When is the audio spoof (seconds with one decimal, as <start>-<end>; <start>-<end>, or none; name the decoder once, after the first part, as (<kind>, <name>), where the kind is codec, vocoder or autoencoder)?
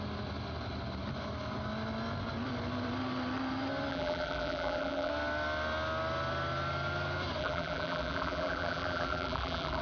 3.9-5.1 (vocoder, BigVGAN v2); 7.4-9.8